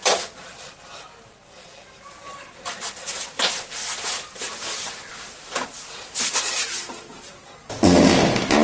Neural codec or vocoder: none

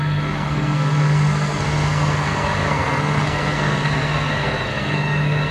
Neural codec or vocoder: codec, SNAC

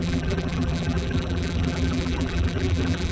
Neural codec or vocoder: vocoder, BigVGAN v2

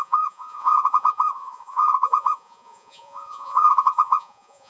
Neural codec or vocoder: vocoder, Vocos